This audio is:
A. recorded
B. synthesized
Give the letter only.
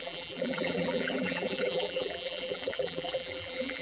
B